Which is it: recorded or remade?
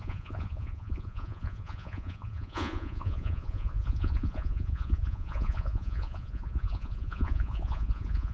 remade